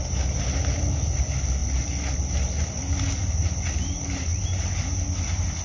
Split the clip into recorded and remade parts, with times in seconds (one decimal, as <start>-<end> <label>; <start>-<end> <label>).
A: 0.0-5.6 recorded